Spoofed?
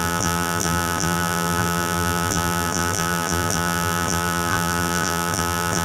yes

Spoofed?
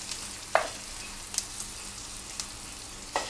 no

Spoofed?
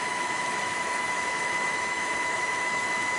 yes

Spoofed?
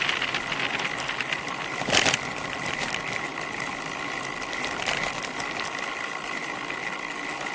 no